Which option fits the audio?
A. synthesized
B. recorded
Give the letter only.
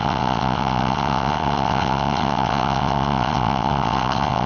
A